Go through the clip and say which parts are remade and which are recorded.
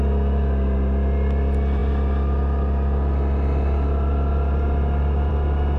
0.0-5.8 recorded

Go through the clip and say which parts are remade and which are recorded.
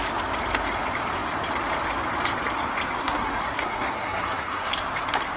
0.0-3.0 recorded; 3.0-4.7 remade; 4.7-5.4 recorded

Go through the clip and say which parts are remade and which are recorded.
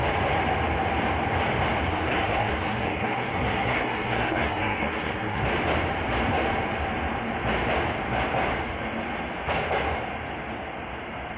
0.0-1.9 recorded; 1.9-5.4 remade; 5.4-11.4 recorded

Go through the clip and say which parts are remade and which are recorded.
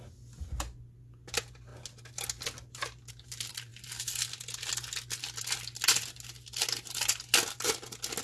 0.0-8.2 recorded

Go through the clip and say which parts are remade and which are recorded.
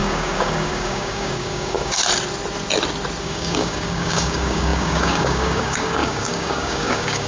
0.0-2.0 remade; 2.0-3.2 recorded; 3.2-7.3 remade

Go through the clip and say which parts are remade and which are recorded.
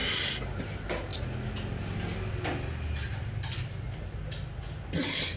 0.0-0.6 remade; 0.6-3.1 recorded; 3.1-3.6 remade; 3.6-5.4 recorded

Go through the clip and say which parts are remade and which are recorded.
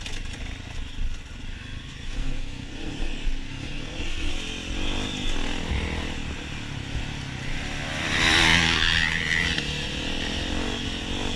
0.0-1.5 recorded; 1.5-4.3 remade; 4.3-11.4 recorded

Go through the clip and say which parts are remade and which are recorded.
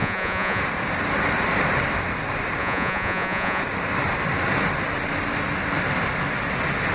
0.0-0.6 remade; 0.6-2.6 recorded; 2.6-3.6 remade; 3.6-6.9 recorded